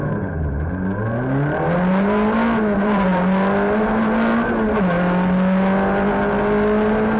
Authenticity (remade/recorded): recorded